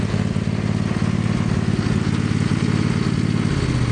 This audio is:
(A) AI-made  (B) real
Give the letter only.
B